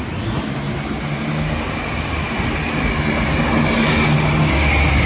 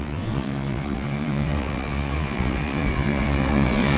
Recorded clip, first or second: first